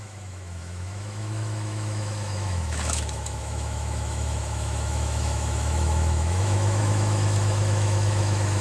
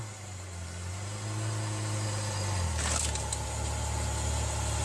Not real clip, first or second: first